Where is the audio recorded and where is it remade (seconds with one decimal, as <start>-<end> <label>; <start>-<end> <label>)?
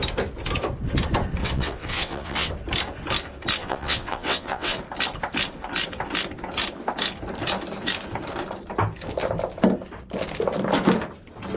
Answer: 0.0-1.4 recorded; 1.4-2.5 remade; 2.5-3.6 recorded; 3.6-4.8 remade; 4.8-11.6 recorded